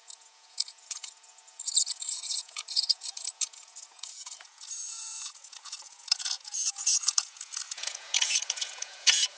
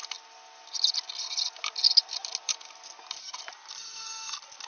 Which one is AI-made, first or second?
first